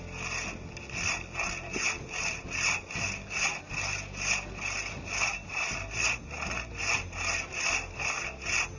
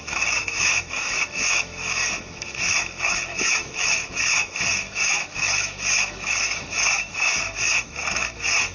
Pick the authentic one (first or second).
first